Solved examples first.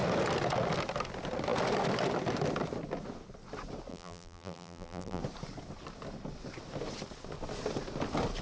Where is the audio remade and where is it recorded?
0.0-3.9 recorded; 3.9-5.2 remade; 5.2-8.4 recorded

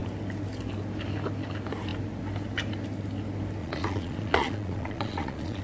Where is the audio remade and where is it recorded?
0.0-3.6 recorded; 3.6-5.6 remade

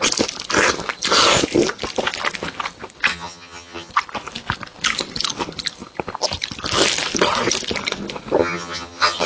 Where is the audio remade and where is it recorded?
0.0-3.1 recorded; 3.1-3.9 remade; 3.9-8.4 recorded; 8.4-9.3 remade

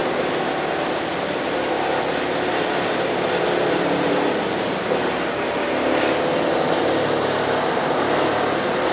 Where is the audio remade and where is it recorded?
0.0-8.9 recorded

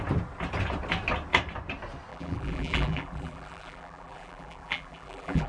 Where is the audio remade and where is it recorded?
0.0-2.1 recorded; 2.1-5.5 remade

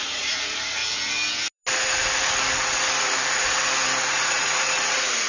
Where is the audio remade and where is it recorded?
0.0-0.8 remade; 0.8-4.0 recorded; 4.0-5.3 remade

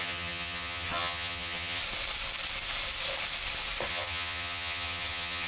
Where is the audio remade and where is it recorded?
0.0-1.8 remade; 1.8-3.9 recorded; 3.9-5.5 remade